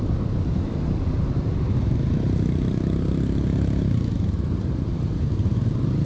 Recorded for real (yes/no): no